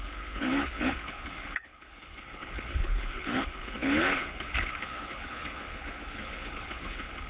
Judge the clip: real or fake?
fake